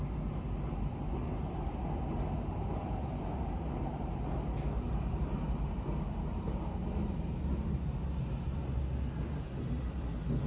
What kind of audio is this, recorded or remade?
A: recorded